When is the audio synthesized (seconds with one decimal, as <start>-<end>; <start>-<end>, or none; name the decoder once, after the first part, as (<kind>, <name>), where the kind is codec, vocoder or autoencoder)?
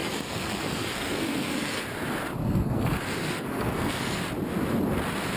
0.0-1.8 (codec, SNAC); 2.4-4.2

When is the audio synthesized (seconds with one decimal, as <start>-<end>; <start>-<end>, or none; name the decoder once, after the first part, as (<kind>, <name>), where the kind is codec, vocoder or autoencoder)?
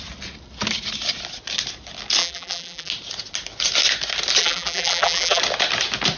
2.2-2.9 (vocoder, BigVGAN v2); 4.4-5.4